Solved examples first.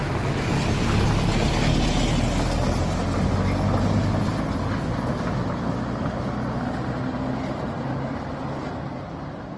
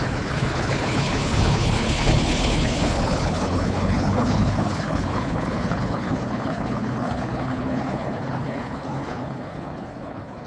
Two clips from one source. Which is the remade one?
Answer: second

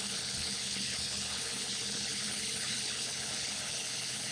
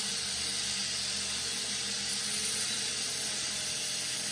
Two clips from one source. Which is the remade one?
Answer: first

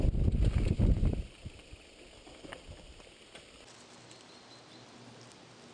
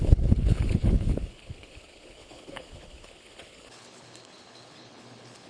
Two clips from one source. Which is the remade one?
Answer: second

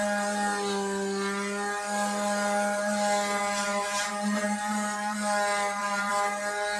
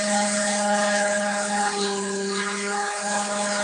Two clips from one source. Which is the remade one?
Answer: second